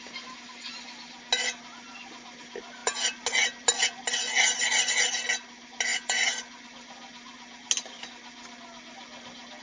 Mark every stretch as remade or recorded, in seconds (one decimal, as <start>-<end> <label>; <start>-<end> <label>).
0.0-9.6 recorded